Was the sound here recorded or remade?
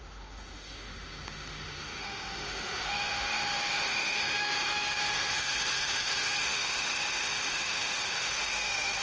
remade